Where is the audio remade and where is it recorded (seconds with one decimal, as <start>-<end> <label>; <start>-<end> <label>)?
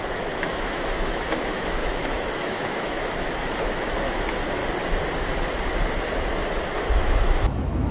0.0-4.6 remade; 4.6-6.8 recorded; 6.8-7.9 remade